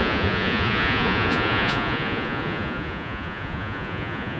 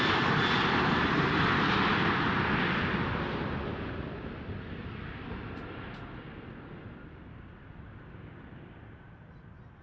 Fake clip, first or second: first